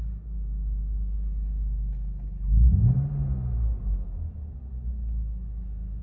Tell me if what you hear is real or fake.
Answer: real